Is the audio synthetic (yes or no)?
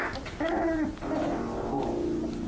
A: no